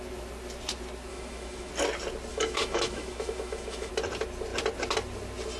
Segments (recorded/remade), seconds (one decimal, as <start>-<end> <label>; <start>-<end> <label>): 0.0-1.1 recorded; 1.1-1.7 remade; 1.7-2.3 recorded; 2.3-3.9 remade; 3.9-5.6 recorded

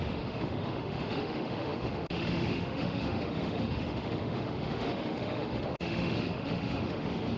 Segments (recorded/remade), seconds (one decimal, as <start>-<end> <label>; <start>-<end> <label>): 0.0-7.4 remade

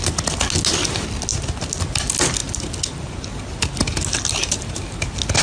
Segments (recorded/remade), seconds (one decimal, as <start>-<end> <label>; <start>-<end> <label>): 0.0-5.4 recorded

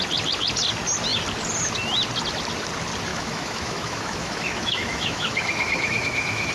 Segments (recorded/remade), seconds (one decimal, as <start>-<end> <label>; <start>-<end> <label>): 0.0-3.1 recorded; 3.1-6.5 remade

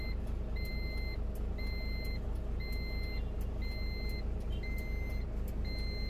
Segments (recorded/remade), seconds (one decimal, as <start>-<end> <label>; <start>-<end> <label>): 0.0-6.1 recorded

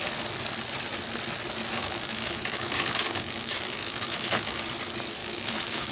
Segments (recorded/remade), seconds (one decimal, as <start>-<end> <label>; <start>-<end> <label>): 0.0-1.8 recorded; 1.8-4.6 remade; 4.6-5.2 recorded; 5.2-5.9 remade

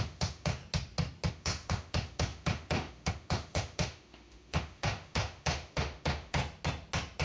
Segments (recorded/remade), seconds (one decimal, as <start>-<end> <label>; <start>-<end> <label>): 0.0-0.6 remade; 0.6-1.3 recorded; 1.3-6.4 remade; 6.4-7.2 recorded

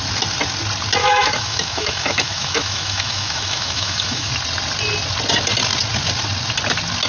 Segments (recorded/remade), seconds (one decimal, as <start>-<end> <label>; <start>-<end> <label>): 0.0-1.0 recorded; 1.0-4.3 remade; 4.3-7.1 recorded